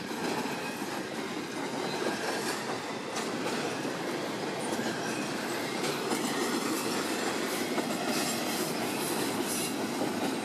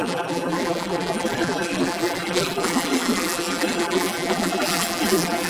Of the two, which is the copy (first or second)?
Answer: second